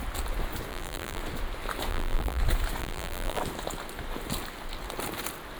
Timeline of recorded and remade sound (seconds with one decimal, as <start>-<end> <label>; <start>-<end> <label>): 0.0-0.7 recorded; 0.7-1.2 remade; 1.2-1.9 recorded; 1.9-2.4 remade; 2.4-2.8 recorded; 2.8-3.4 remade; 3.4-5.6 recorded